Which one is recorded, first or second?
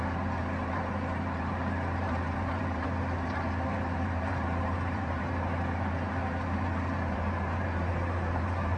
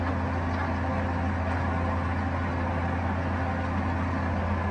second